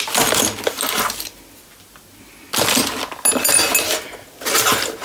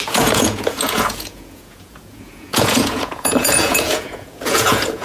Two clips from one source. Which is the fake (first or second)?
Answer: second